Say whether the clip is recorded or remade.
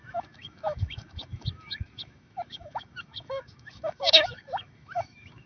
remade